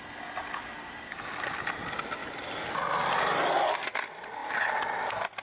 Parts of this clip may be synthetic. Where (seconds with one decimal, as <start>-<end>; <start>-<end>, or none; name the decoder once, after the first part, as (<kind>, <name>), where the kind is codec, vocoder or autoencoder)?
none